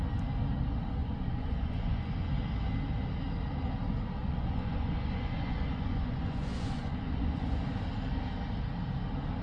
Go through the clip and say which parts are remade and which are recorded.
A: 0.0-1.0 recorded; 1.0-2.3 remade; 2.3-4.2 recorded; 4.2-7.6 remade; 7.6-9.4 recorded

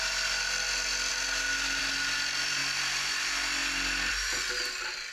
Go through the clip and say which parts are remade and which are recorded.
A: 0.0-5.1 recorded

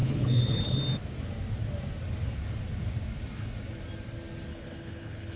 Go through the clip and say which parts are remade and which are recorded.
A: 0.0-0.8 remade; 0.8-4.5 recorded; 4.5-5.4 remade

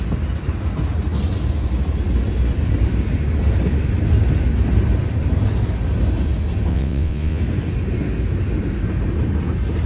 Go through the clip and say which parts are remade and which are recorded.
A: 0.0-6.7 recorded; 6.7-7.4 remade; 7.4-9.9 recorded

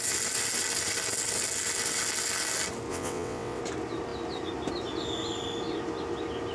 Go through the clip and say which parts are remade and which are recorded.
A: 0.0-2.9 recorded; 2.9-3.6 remade; 3.6-6.5 recorded

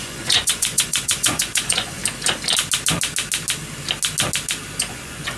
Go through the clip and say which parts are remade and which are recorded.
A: 0.0-2.0 remade; 2.0-4.8 recorded; 4.8-5.4 remade